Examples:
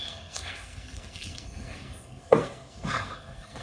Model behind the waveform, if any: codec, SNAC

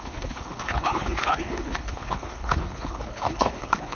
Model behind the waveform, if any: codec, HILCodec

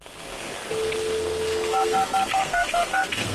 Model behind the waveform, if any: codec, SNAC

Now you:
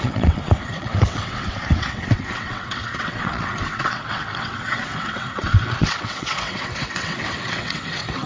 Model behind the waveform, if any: vocoder, WaveNeXt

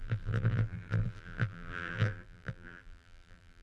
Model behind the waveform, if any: vocoder, BigVGAN v2